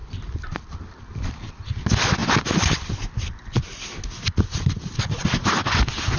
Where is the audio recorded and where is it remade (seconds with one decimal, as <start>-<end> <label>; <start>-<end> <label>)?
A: 0.0-6.2 recorded